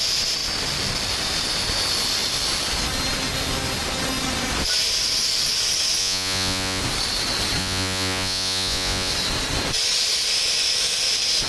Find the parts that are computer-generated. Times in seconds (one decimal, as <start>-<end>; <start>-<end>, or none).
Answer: 6.0-6.8; 7.6-9.1